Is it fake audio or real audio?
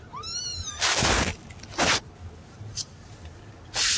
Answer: real